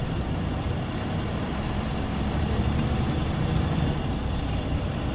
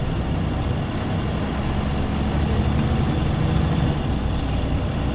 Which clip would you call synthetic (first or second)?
first